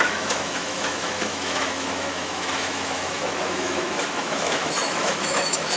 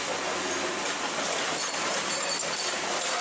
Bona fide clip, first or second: second